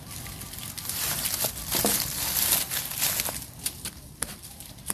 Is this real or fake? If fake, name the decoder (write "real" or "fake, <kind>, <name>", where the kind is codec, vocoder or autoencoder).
real